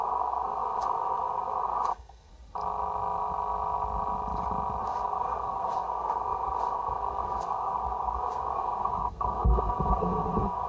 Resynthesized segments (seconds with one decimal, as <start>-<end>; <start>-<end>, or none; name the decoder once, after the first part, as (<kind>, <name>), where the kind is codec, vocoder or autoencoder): 0.0-2.3 (codec, SNAC); 4.8-10.7